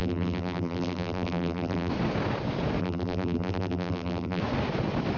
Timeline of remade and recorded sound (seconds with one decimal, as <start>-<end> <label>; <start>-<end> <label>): 0.0-1.9 remade; 1.9-2.8 recorded; 2.8-4.4 remade; 4.4-5.2 recorded